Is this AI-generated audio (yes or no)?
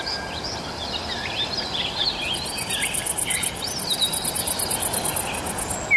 no